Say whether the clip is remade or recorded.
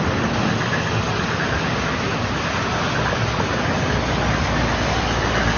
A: recorded